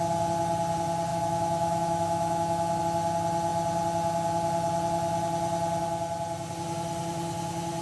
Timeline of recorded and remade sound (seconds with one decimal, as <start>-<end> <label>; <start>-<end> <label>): 0.0-1.1 recorded; 1.1-2.8 remade; 2.8-7.8 recorded